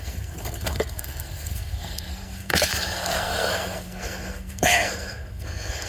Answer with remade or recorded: remade